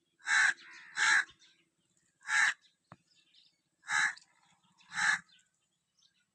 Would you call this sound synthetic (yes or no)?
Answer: yes